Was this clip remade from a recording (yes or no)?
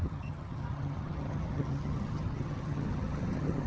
yes